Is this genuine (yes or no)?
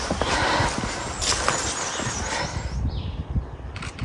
yes